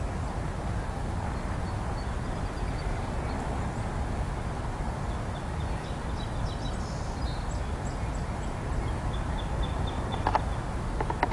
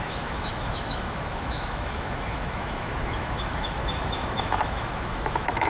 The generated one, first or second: second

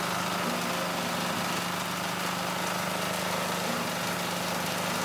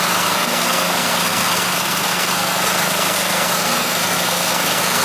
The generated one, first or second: second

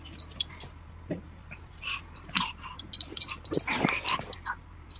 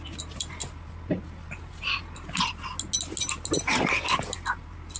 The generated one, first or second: first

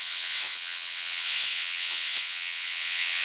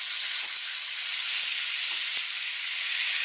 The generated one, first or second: first